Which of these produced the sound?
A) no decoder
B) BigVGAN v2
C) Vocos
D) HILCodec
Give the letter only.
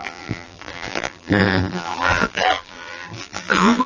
B